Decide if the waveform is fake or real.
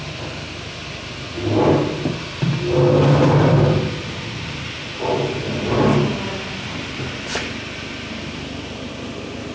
real